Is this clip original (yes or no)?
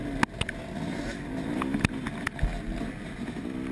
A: yes